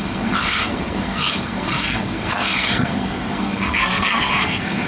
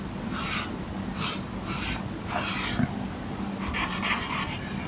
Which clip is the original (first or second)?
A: second